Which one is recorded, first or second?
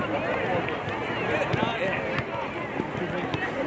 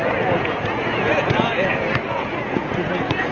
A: first